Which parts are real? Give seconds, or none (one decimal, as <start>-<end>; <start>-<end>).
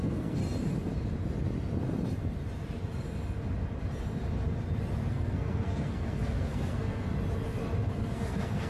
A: 0.4-5.1; 7.1-7.9